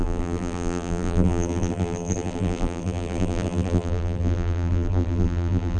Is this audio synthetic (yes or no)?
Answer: yes